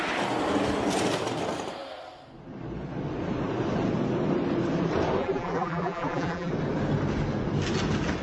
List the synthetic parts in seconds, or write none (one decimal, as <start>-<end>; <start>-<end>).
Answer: 5.2-6.5